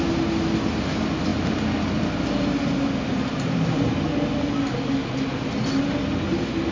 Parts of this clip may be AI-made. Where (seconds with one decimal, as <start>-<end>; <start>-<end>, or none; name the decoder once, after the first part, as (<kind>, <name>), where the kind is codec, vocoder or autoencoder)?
none